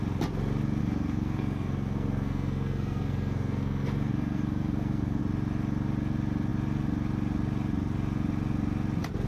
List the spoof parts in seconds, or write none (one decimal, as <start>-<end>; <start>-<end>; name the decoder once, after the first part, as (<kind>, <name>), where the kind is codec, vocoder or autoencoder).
0.8-5.2 (codec, SNAC)